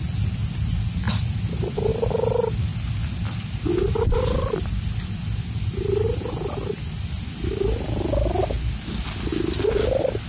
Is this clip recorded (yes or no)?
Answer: yes